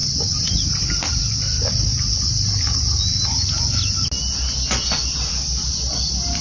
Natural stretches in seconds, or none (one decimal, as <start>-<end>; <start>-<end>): 0.0-6.4